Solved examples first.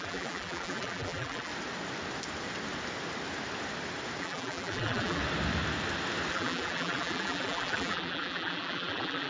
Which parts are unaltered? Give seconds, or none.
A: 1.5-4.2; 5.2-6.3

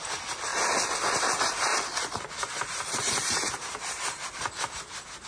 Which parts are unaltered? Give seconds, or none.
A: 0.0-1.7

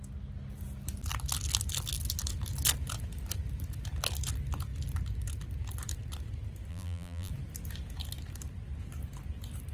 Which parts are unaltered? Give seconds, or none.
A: 0.0-6.7; 7.3-9.7